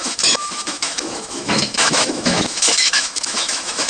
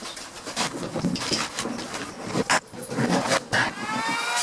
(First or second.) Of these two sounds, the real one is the second